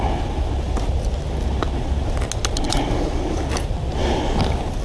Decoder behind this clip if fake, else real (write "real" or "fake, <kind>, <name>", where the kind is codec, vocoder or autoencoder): real